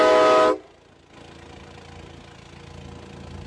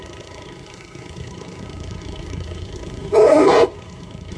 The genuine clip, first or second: first